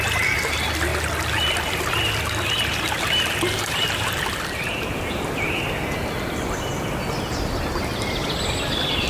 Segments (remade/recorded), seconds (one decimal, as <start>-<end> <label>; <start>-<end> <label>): 0.0-6.7 remade; 6.7-7.7 recorded; 7.7-9.1 remade